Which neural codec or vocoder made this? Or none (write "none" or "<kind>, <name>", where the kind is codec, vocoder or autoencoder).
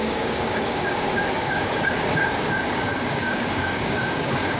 codec, DAC